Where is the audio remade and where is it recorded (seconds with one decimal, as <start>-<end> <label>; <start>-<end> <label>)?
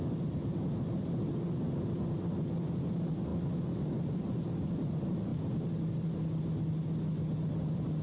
0.0-8.0 recorded